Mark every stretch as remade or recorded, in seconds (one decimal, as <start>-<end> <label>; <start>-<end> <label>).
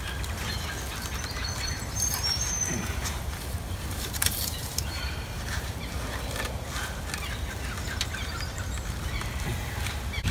0.0-1.8 recorded; 1.8-5.8 remade; 5.8-10.3 recorded